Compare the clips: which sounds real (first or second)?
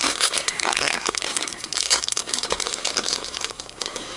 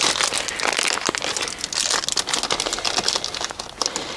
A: second